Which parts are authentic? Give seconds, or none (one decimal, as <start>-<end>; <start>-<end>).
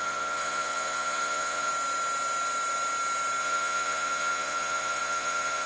1.7-3.4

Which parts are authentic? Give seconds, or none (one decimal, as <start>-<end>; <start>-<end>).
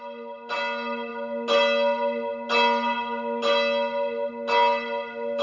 0.0-5.4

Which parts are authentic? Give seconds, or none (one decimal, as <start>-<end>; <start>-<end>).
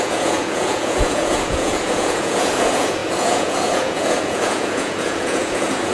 none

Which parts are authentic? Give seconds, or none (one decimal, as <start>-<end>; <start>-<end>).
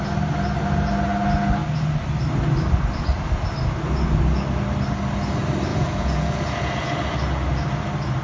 0.0-5.7; 6.9-8.2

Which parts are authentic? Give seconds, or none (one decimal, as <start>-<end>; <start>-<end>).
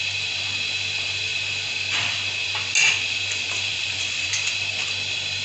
0.0-3.7; 4.3-5.4